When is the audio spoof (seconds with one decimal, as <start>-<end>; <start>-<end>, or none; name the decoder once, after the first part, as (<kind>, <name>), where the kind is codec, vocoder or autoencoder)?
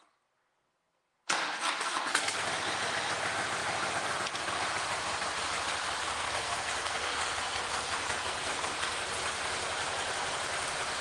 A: 0.6-2.5 (codec, SNAC); 6.0-9.1